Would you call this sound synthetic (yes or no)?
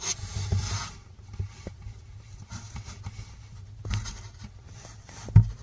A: no